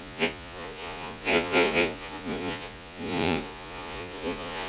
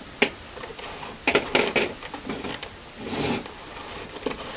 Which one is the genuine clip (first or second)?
second